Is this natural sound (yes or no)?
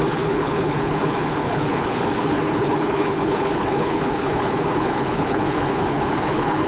no